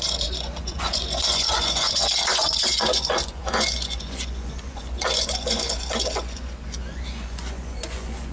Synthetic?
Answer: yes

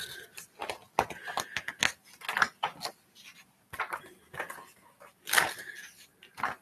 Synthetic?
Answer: no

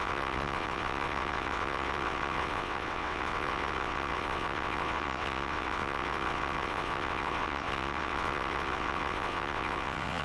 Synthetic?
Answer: yes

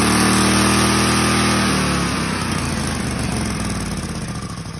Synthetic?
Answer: no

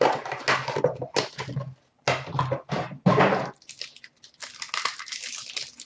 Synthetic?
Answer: no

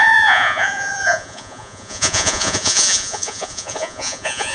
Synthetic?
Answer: yes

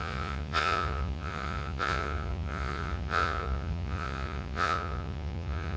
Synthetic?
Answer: yes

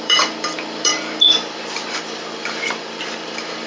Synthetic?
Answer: yes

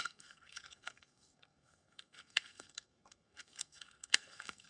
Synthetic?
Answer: yes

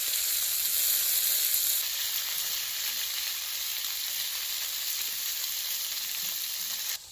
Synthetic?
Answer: no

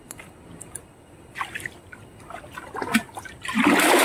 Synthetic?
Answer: no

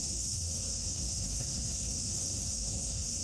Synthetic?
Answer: yes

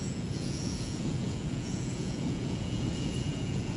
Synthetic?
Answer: yes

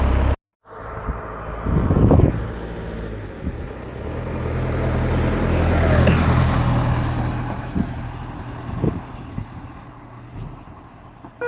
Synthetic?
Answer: no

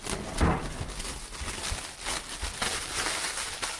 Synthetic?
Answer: no